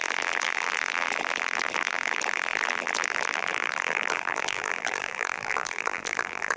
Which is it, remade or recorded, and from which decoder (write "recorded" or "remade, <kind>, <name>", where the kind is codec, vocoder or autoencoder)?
remade, vocoder, BigVGAN v2